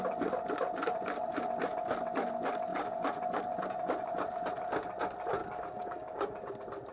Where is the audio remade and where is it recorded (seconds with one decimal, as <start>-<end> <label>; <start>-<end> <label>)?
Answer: 0.0-5.4 recorded; 5.4-6.5 remade; 6.5-6.9 recorded

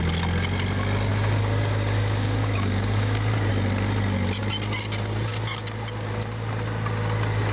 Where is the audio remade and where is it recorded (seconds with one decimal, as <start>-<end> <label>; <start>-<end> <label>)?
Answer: 0.0-1.1 recorded; 1.1-3.5 remade; 3.5-7.5 recorded